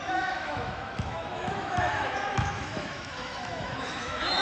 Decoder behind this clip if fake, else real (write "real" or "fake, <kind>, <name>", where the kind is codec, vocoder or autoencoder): fake, autoencoder, DAC-VAE